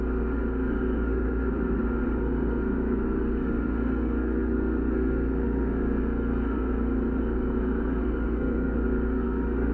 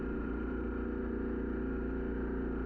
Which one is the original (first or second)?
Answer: second